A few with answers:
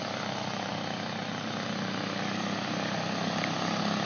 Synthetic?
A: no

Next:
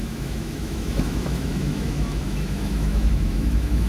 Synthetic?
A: yes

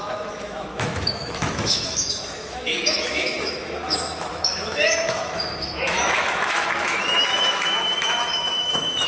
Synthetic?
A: yes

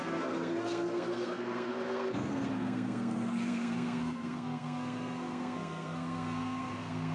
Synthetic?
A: yes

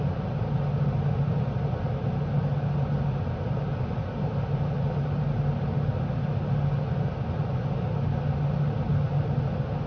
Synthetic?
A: no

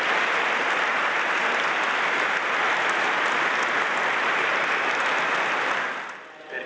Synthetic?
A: no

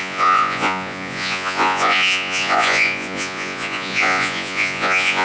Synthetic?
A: yes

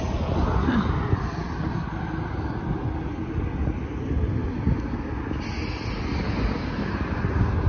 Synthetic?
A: no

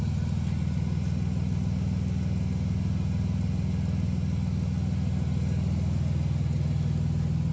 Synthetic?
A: no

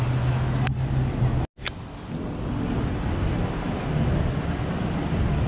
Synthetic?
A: no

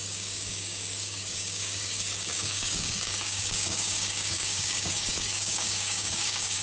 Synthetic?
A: yes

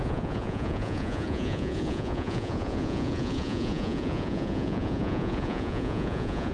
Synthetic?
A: yes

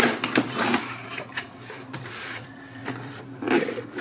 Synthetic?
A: yes